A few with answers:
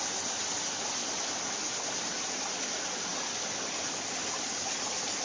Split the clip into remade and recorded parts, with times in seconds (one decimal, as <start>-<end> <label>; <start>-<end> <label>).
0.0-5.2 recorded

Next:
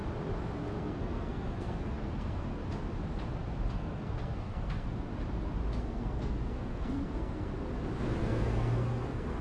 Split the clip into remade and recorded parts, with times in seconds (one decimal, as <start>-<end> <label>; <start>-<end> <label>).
0.0-0.7 recorded; 0.7-2.6 remade; 2.6-3.7 recorded; 3.7-5.1 remade; 5.1-5.8 recorded; 5.8-7.5 remade; 7.5-8.2 recorded; 8.2-9.4 remade

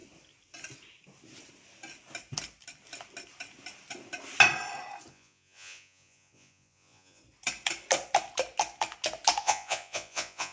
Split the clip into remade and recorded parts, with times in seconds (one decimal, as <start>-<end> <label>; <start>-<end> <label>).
0.0-5.1 recorded; 5.1-7.2 remade; 7.2-9.4 recorded; 9.4-10.5 remade

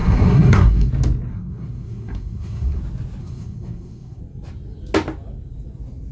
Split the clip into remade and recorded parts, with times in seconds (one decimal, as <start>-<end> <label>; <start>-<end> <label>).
0.0-0.9 remade; 0.9-1.3 recorded; 1.3-2.8 remade; 2.8-3.2 recorded; 3.2-4.2 remade; 4.2-6.1 recorded

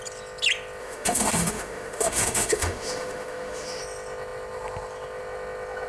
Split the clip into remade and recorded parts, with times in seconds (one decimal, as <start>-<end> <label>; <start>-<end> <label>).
0.0-0.8 recorded; 0.8-3.8 remade; 3.8-5.9 recorded

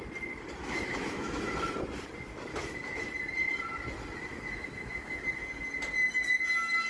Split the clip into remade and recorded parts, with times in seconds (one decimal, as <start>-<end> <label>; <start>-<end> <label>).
0.0-0.6 recorded; 0.6-1.5 remade; 1.5-2.5 recorded; 2.5-3.1 remade; 3.1-4.3 recorded; 4.3-5.2 remade; 5.2-6.9 recorded